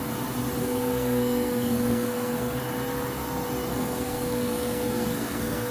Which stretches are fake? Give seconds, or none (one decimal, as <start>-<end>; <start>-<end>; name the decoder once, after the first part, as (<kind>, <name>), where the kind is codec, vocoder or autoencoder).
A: 0.6-2.6 (codec, SNAC); 3.7-5.7